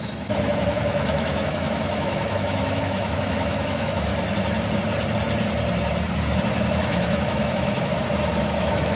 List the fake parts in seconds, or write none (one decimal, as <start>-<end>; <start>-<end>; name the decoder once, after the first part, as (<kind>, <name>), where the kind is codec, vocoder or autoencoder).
0.0-4.1 (autoencoder, DAC-VAE); 6.4-7.9; 8.4-9.0